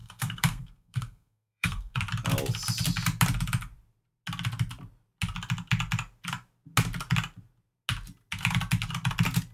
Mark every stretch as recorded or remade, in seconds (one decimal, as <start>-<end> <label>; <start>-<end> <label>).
0.0-2.0 remade; 2.0-9.5 recorded